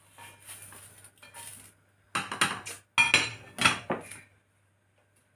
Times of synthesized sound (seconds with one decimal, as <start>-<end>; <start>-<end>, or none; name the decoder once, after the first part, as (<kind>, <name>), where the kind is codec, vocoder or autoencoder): none